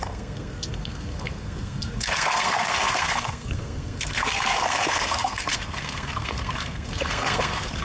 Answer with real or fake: fake